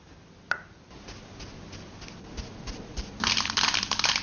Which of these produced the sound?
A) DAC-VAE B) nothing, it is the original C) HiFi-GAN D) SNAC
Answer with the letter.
B